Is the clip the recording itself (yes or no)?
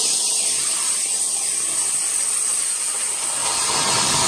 yes